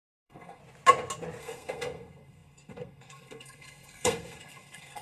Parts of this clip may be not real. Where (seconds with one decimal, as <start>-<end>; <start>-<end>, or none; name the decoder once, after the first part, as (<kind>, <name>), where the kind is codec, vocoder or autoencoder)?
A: 0.0-0.6 (codec, SNAC); 1.4-5.0